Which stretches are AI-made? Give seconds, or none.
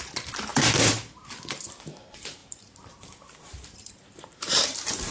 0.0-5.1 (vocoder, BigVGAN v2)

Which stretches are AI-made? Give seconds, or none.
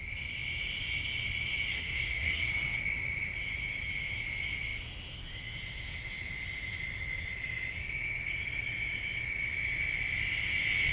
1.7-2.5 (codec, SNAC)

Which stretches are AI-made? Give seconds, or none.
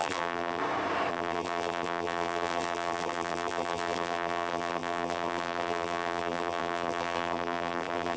0.0-0.6 (vocoder, BigVGAN v2); 1.1-8.2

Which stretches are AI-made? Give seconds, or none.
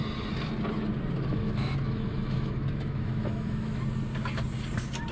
1.3-3.8 (autoencoder, DAC-VAE)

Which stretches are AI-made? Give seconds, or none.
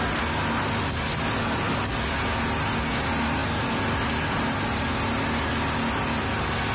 none